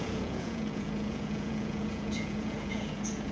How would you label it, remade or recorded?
remade